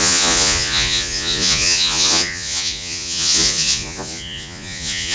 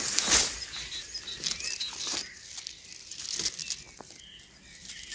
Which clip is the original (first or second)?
second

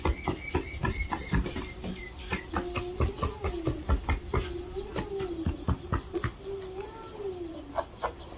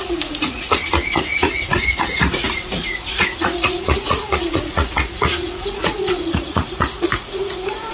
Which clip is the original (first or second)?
first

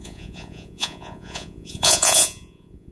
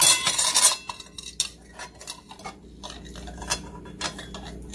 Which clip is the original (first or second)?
second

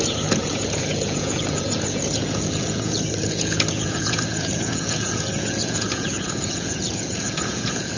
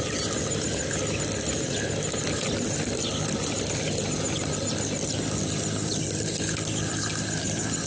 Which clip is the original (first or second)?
second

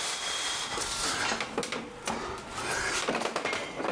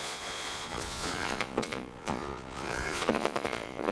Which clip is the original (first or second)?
first